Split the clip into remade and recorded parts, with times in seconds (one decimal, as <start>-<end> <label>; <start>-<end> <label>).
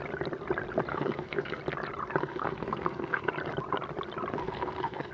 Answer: 0.0-0.9 recorded; 0.9-1.6 remade; 1.6-2.2 recorded; 2.2-3.3 remade; 3.3-4.4 recorded; 4.4-5.1 remade